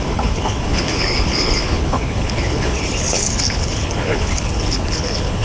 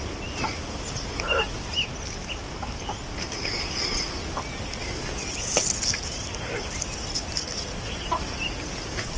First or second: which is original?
second